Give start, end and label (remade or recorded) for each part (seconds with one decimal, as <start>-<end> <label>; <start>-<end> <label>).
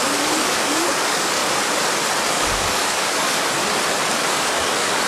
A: 0.0-1.4 remade; 1.4-2.3 recorded; 2.3-3.6 remade; 3.6-4.2 recorded; 4.2-5.1 remade